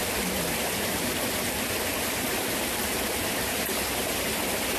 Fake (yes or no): no